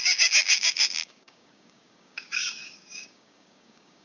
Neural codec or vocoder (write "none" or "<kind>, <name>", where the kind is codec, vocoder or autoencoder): codec, DAC